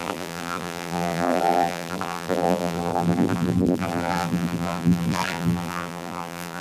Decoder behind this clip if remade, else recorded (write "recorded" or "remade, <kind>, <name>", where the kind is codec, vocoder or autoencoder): remade, vocoder, BigVGAN v2